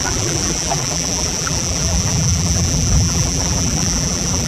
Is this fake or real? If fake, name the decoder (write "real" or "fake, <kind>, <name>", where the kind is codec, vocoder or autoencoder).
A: fake, vocoder, BigVGAN v2